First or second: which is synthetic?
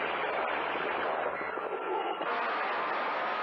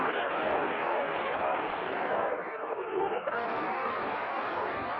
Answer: second